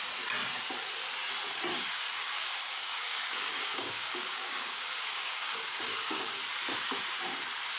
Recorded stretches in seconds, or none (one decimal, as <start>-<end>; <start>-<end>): 0.0-1.7; 6.4-7.8